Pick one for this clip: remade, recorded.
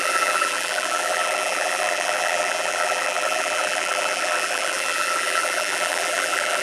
remade